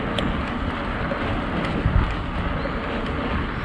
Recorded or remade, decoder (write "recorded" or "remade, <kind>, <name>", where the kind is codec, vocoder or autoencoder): recorded